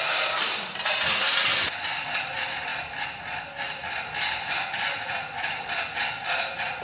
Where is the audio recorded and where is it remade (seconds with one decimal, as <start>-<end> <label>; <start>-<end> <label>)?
0.0-6.8 recorded